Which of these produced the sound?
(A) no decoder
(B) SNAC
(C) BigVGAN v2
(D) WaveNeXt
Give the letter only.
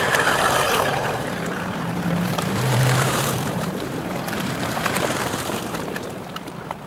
C